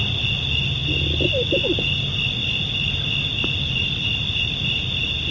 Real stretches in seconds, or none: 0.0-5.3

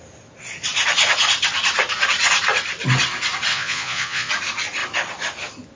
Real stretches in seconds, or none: 0.0-3.5; 4.3-5.8

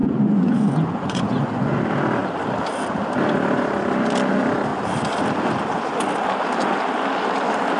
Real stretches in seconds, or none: 1.8-7.8

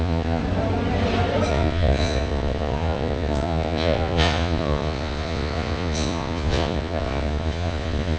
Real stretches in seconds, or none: 0.4-1.5